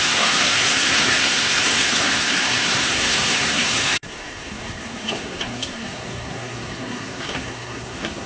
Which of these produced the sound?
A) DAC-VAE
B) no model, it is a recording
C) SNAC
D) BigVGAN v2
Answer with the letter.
C